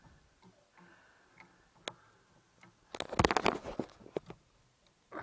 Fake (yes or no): no